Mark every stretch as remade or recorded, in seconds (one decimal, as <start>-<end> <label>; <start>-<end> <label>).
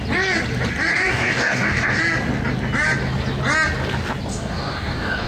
0.0-0.9 recorded; 0.9-2.0 remade; 2.0-4.3 recorded; 4.3-5.3 remade